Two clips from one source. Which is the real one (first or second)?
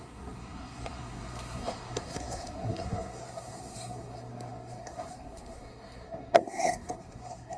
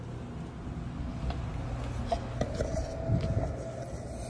second